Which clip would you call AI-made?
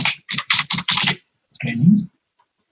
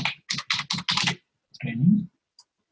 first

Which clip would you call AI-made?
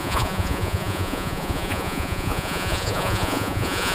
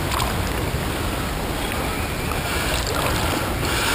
first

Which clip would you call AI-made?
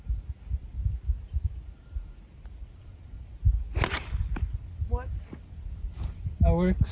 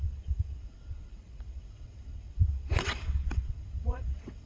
second